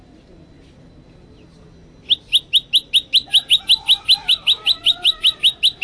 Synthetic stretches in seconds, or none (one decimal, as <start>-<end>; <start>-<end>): 4.2-5.8